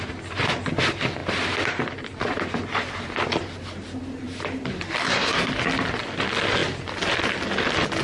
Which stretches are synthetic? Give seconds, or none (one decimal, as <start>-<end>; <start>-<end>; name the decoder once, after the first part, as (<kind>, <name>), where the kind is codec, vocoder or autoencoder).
5.0-5.5 (codec, SNAC)